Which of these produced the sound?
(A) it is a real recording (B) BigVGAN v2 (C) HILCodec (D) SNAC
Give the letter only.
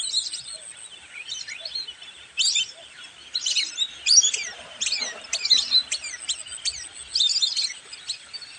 A